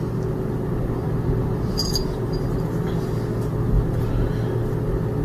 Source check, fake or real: real